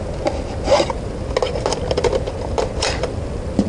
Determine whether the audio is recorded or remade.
recorded